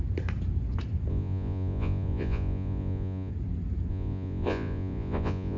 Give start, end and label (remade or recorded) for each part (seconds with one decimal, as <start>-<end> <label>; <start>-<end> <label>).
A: 0.0-1.1 recorded; 1.1-3.3 remade; 3.3-3.9 recorded; 3.9-5.6 remade